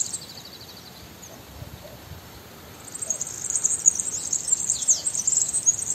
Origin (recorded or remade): recorded